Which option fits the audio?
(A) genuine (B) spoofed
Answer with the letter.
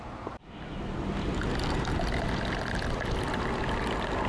A